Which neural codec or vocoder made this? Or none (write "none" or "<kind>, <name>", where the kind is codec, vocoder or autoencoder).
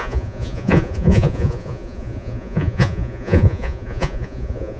vocoder, Vocos